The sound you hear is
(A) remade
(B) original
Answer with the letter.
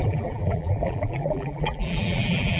A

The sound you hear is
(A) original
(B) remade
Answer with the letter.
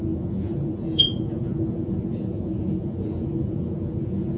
B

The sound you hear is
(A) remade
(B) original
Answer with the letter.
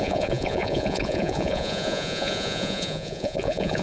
A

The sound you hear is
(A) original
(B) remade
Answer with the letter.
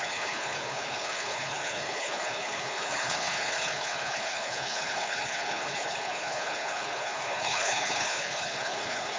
B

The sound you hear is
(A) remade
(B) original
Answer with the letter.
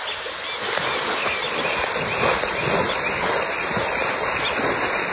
B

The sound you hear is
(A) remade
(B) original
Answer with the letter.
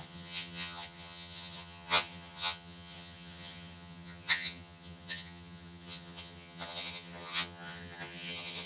A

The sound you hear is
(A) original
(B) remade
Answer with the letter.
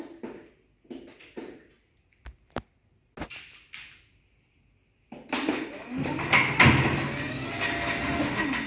A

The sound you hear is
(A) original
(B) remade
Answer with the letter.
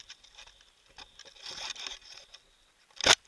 A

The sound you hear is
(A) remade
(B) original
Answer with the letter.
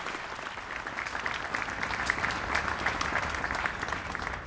B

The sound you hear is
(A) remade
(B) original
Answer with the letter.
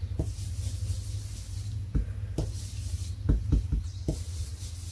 B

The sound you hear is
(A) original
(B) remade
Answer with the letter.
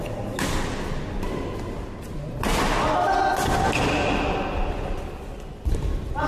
A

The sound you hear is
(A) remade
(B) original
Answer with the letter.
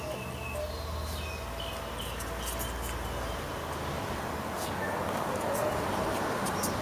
B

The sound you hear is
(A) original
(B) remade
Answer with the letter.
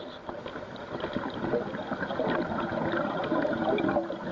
A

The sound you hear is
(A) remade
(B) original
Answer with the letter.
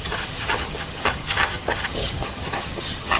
A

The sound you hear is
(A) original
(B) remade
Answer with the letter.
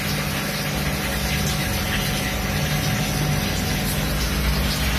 A